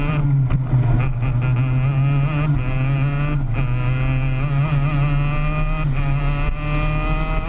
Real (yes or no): yes